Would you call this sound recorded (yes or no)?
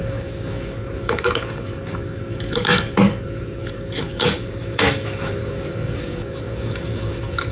no